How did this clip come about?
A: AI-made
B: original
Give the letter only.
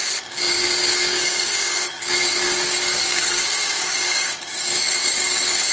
A